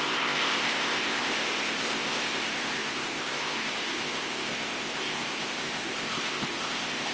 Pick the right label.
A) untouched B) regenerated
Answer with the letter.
B